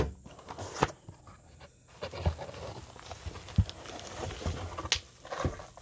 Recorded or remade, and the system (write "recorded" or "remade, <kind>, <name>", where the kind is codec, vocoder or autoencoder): recorded